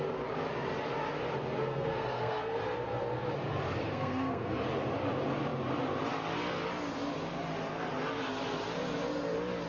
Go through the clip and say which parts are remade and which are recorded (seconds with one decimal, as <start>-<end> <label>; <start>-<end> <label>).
0.0-1.6 recorded; 1.6-2.6 remade; 2.6-3.8 recorded; 3.8-4.5 remade; 4.5-9.7 recorded